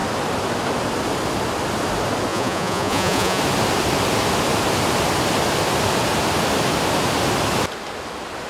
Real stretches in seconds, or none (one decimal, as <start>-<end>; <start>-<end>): 0.0-2.3; 3.4-8.5